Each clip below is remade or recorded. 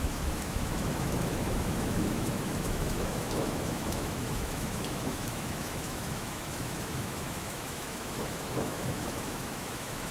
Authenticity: remade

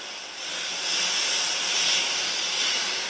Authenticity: recorded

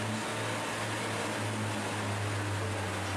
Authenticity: recorded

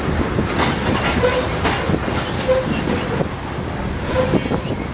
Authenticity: recorded